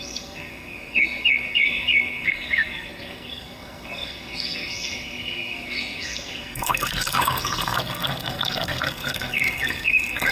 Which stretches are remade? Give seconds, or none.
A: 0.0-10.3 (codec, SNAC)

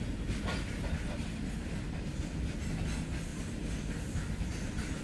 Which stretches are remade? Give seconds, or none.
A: none

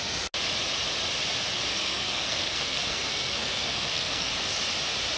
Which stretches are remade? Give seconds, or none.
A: 1.7-4.3 (codec, SNAC)

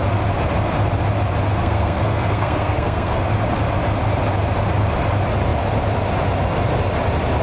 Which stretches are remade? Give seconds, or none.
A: 1.6-3.2 (codec, SNAC)